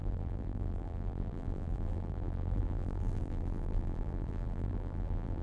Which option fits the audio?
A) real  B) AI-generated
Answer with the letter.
B